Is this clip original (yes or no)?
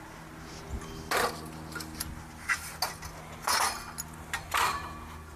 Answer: yes